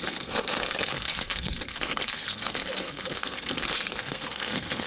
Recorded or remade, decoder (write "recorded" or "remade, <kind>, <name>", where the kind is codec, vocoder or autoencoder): remade, codec, SNAC